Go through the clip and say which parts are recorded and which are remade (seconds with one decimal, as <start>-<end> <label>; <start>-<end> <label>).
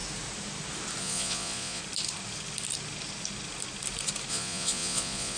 0.0-1.0 recorded; 1.0-1.8 remade; 1.8-4.3 recorded; 4.3-5.4 remade